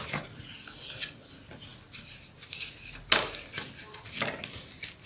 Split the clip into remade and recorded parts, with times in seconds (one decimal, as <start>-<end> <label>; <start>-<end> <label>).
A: 0.0-5.1 recorded